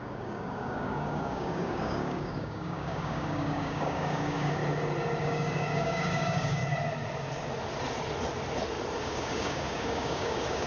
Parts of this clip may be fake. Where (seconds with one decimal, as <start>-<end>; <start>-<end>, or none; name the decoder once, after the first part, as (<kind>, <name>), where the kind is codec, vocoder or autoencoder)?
0.0-4.6 (codec, DAC); 5.2-6.6; 9.0-10.7